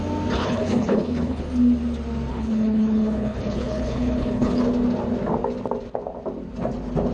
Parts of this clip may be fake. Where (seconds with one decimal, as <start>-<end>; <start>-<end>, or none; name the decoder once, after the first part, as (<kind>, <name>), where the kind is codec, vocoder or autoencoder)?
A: 0.4-1.4 (codec, HILCodec); 2.3-4.6